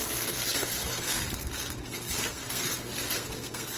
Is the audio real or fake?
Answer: fake